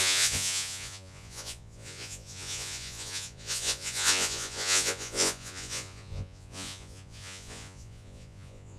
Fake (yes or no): yes